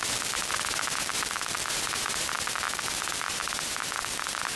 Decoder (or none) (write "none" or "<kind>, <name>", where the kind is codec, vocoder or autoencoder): none